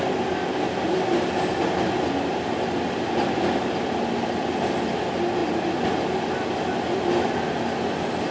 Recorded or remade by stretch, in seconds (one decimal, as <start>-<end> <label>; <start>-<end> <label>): 0.0-8.3 recorded